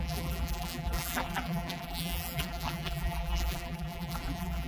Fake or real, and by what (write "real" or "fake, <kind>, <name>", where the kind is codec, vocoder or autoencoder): fake, vocoder, BigVGAN v2